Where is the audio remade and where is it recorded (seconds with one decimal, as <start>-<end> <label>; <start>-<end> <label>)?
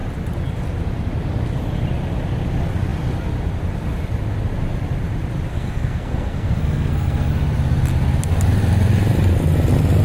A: 0.0-5.5 recorded; 5.5-7.3 remade; 7.3-10.0 recorded